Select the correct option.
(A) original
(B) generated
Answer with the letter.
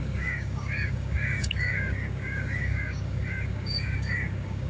B